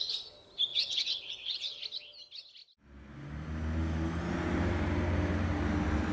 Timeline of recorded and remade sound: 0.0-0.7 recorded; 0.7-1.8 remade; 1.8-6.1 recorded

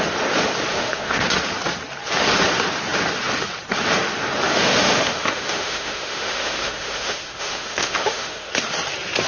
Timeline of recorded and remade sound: 0.0-0.7 recorded; 0.7-1.2 remade; 1.2-4.5 recorded; 4.5-8.5 remade; 8.5-9.3 recorded